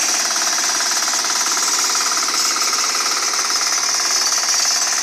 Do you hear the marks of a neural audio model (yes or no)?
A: no